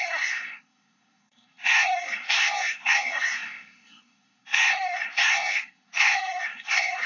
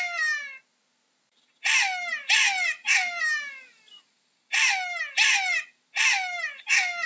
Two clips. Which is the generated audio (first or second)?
first